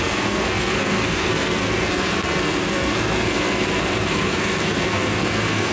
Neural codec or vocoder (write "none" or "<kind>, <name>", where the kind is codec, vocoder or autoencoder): codec, SNAC